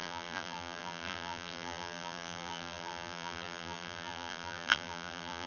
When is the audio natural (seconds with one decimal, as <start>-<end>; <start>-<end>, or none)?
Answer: none